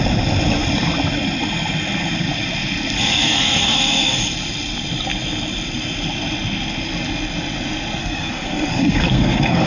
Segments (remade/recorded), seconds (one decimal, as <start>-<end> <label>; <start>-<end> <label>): 0.0-3.1 recorded; 3.1-4.2 remade; 4.2-8.0 recorded; 8.0-9.7 remade